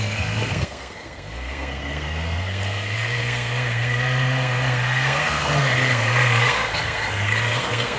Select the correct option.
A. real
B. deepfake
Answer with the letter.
B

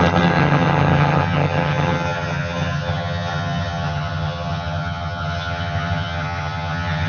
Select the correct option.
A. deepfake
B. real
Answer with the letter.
A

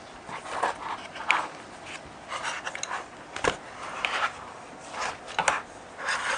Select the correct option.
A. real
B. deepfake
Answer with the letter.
A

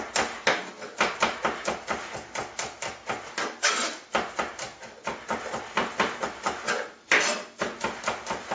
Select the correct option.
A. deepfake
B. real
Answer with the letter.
B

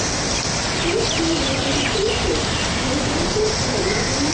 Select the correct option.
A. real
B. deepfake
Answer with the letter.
A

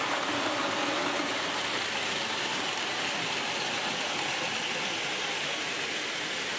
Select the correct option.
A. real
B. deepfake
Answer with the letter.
A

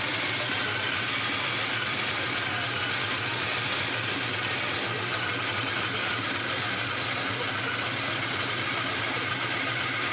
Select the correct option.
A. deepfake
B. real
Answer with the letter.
B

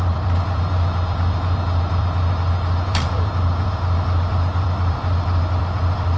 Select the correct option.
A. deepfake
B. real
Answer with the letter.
A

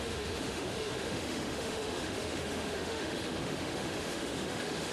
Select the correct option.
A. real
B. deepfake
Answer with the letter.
B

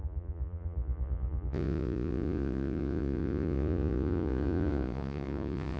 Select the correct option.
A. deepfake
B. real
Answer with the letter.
A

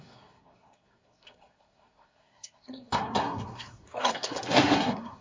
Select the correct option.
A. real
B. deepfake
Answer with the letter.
B